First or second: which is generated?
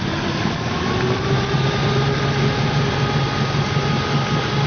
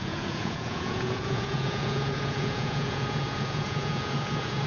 second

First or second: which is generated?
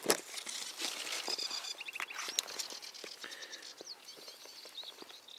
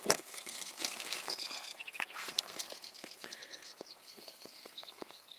second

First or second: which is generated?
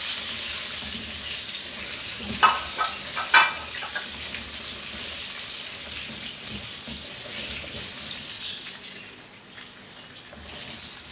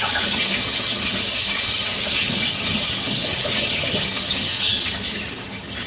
second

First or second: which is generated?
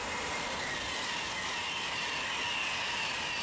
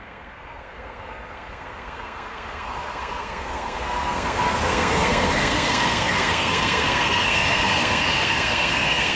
second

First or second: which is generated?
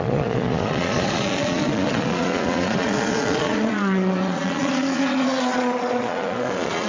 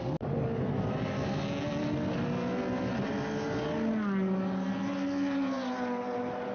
first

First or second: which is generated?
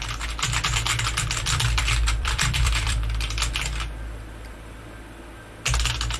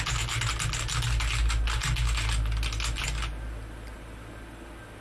first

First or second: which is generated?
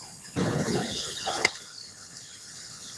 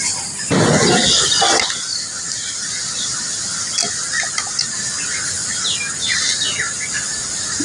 first